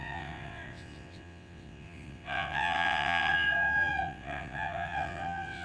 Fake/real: fake